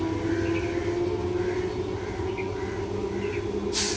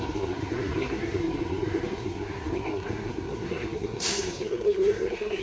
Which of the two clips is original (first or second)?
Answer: first